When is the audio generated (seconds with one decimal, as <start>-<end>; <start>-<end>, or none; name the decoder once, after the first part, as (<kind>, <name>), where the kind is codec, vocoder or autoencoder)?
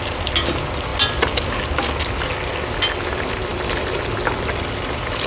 none